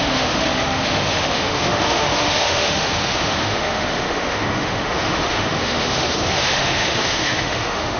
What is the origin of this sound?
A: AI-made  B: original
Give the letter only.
A